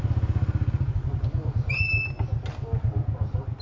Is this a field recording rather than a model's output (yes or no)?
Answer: yes